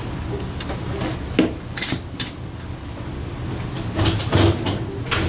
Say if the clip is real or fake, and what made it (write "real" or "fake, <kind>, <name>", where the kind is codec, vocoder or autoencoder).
real